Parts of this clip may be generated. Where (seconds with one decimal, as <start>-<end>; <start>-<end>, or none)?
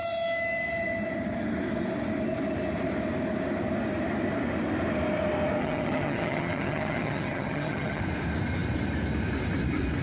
5.6-8.0